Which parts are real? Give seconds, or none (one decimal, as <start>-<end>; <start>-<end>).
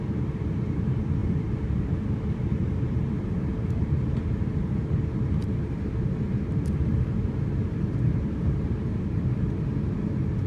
none